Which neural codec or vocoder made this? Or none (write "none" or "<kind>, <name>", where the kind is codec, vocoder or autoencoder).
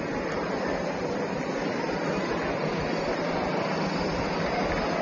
none